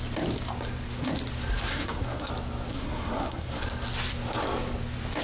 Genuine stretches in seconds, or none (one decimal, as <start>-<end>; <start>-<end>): 0.0-1.7; 2.3-2.7; 3.6-5.2